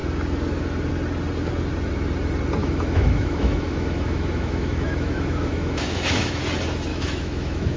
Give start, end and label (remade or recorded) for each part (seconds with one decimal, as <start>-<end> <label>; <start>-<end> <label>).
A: 0.0-2.6 recorded; 2.6-6.4 remade; 6.4-6.9 recorded; 6.9-7.8 remade